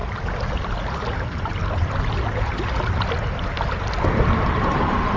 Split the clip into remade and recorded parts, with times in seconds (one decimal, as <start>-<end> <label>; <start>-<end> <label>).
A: 0.0-1.2 recorded; 1.2-1.6 remade; 1.6-4.7 recorded; 4.7-5.2 remade